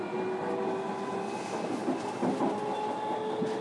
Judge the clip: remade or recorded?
recorded